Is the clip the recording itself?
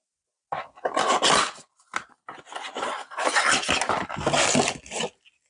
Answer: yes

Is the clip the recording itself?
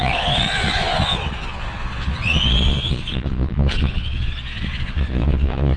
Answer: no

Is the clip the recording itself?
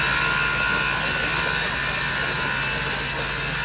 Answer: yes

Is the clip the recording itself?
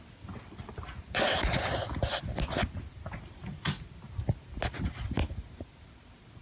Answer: yes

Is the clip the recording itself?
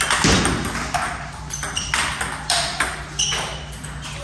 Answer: yes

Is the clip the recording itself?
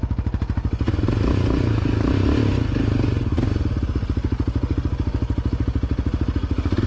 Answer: yes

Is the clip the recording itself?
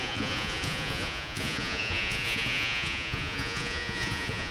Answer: no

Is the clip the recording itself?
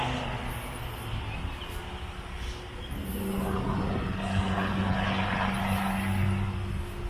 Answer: yes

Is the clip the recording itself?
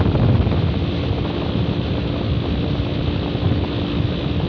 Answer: yes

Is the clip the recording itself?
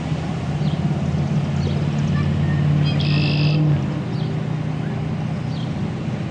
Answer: yes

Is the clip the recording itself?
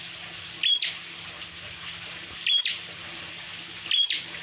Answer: yes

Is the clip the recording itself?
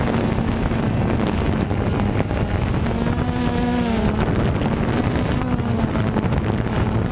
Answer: yes